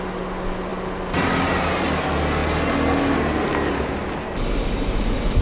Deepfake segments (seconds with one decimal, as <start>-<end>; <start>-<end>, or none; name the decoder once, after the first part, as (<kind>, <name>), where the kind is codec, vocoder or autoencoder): none